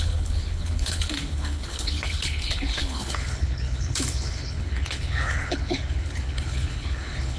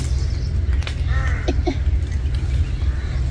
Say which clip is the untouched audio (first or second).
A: second